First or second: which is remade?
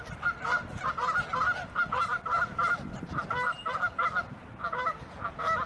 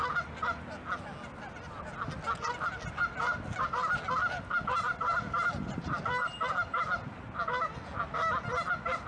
first